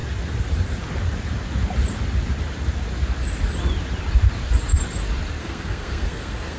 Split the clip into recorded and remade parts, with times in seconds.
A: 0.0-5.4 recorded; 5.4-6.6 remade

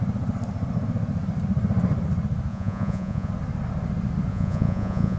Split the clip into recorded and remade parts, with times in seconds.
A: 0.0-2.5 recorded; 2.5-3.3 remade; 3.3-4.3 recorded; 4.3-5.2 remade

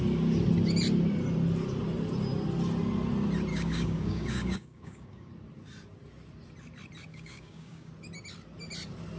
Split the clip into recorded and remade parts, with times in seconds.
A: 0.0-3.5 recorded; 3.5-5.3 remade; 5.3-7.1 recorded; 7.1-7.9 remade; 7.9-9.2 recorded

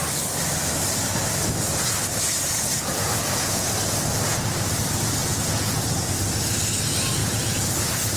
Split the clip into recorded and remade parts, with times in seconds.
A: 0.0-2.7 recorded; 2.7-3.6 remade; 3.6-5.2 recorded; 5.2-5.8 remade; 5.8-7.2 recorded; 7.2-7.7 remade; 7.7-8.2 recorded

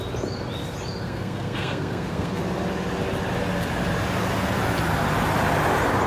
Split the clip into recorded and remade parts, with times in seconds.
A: 0.0-1.0 recorded; 1.0-2.4 remade; 2.4-6.1 recorded